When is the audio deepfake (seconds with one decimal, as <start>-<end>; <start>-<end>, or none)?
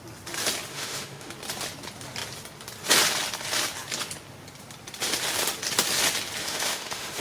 0.7-1.3; 6.4-7.2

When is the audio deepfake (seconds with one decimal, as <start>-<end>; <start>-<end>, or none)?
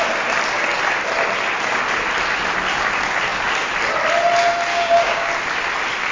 4.7-5.3